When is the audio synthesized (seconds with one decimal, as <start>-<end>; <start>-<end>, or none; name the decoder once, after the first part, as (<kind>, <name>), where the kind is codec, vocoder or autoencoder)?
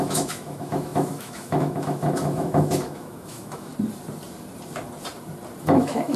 0.0-3.7 (autoencoder, DAC-VAE); 5.6-6.2